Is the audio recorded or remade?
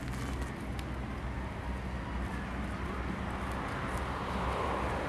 recorded